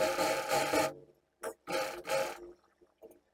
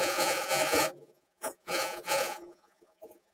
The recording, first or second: first